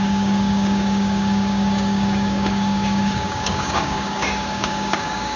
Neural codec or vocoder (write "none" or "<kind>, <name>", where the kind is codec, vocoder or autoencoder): codec, DAC